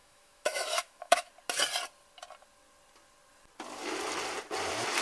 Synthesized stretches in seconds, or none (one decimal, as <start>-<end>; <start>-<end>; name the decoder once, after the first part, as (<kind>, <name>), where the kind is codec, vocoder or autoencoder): 0.0-1.3 (autoencoder, DAC-VAE)